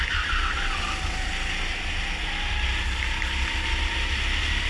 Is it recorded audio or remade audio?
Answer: recorded